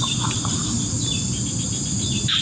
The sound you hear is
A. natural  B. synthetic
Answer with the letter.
A